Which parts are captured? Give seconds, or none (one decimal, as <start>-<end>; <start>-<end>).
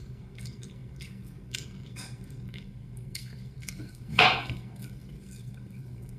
none